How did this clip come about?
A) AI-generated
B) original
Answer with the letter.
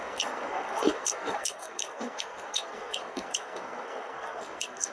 A